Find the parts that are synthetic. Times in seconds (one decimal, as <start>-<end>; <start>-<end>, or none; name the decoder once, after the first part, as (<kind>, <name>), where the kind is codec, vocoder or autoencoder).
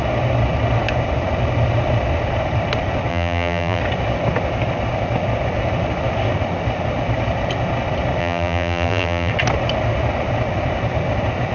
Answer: 3.1-3.8 (vocoder, BigVGAN v2); 8.2-9.3